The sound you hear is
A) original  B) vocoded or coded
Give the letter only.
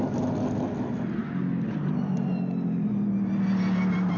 A